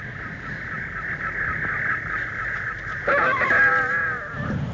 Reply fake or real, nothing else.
real